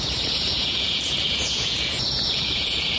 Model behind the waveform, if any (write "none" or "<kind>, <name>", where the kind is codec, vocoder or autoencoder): vocoder, Vocos